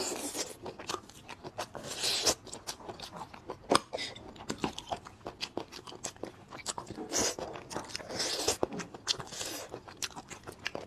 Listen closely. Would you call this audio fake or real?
real